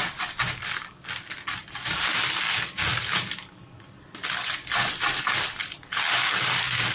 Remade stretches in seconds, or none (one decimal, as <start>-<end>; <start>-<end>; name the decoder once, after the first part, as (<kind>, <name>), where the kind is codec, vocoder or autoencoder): 0.0-1.0 (vocoder, BigVGAN v2); 1.6-3.6; 5.6-6.9